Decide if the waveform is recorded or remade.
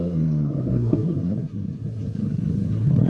remade